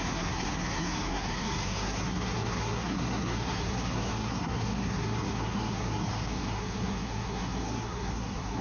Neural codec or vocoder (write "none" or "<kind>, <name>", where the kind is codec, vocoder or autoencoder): codec, SNAC